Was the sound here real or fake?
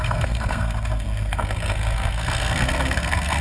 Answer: fake